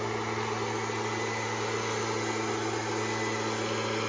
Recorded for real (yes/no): yes